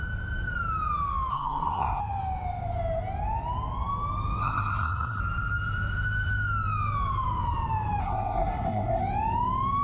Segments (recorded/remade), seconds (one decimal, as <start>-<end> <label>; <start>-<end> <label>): 0.0-1.3 recorded; 1.3-2.0 remade; 2.0-4.4 recorded; 4.4-5.2 remade; 5.2-8.0 recorded; 8.0-9.0 remade; 9.0-9.8 recorded